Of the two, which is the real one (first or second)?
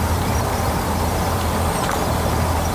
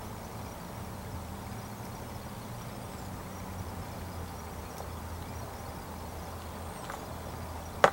second